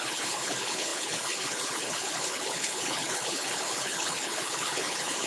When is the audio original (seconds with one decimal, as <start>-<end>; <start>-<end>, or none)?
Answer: none